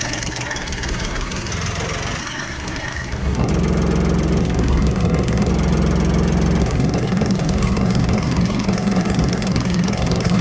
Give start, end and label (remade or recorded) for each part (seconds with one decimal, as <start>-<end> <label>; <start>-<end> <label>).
0.0-1.5 remade; 1.5-2.2 recorded; 2.2-3.5 remade; 3.5-4.4 recorded; 4.4-5.5 remade; 5.5-6.6 recorded; 6.6-10.4 remade